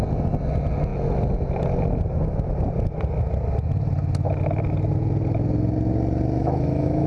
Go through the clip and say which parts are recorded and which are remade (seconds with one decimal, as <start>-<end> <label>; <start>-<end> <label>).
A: 0.0-6.4 recorded; 6.4-7.1 remade

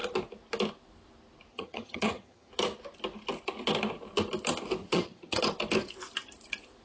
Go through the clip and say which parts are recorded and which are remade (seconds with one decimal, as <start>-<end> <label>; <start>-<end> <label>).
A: 0.0-1.5 recorded; 1.5-2.5 remade; 2.5-4.8 recorded; 4.8-5.4 remade; 5.4-6.8 recorded